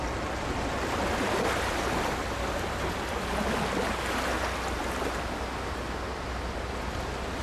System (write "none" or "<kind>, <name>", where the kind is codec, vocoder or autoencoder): none